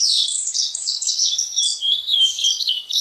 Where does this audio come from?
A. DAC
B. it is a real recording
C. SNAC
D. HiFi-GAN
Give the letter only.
C